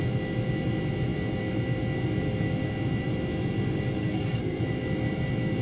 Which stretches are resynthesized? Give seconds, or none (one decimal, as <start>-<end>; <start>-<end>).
4.0-4.6